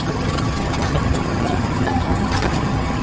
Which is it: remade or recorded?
remade